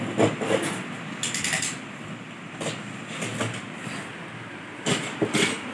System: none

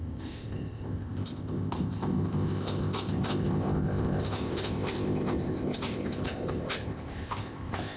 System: codec, ZipCodec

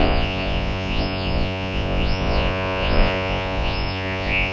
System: vocoder, Vocos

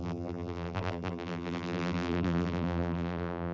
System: vocoder, BigVGAN v2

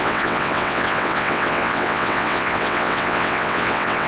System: vocoder, WaveNeXt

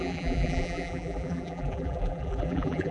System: vocoder, BigVGAN v2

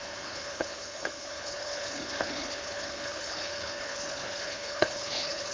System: codec, HILCodec